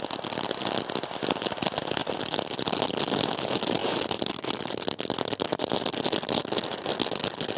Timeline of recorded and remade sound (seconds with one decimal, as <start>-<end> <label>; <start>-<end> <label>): 0.0-7.6 recorded